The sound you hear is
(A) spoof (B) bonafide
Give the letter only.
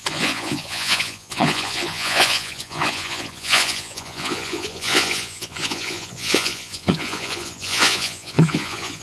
A